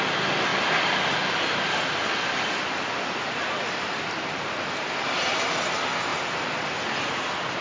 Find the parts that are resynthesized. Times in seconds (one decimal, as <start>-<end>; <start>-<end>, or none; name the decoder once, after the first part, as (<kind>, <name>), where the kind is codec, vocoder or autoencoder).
none

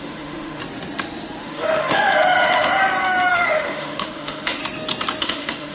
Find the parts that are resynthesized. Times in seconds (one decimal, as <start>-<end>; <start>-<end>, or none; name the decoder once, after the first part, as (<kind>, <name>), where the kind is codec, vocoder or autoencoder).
0.0-0.6 (autoencoder, DAC-VAE); 1.4-2.1; 3.3-4.6; 5.2-5.7

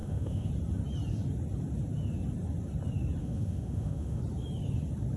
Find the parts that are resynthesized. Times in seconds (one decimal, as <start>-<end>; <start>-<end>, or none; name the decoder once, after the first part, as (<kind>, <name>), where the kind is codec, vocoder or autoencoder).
0.0-0.5 (autoencoder, DAC-VAE); 3.2-4.2

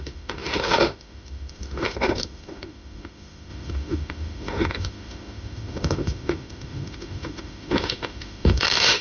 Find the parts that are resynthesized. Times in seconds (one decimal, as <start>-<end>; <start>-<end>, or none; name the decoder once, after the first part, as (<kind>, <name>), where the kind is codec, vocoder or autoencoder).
0.0-9.0 (autoencoder, DAC-VAE)